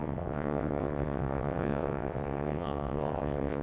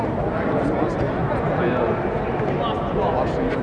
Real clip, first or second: second